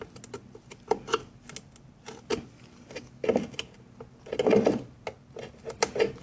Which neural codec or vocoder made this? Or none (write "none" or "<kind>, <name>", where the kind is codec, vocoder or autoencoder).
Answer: none